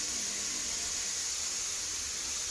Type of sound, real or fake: real